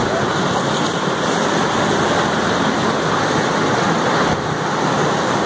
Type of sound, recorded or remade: recorded